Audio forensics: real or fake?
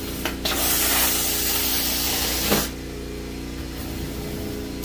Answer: real